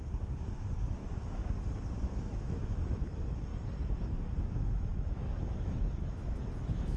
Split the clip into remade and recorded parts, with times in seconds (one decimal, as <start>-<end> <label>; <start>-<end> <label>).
0.0-1.4 remade; 1.4-2.0 recorded; 2.0-3.5 remade; 3.5-4.5 recorded; 4.5-7.0 remade